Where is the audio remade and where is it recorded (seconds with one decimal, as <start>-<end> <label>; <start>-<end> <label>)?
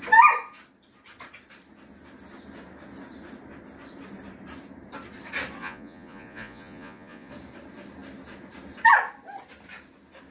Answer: 0.0-5.6 recorded; 5.6-7.3 remade; 7.3-10.3 recorded